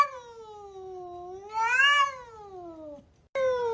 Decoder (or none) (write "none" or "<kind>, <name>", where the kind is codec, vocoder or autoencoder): none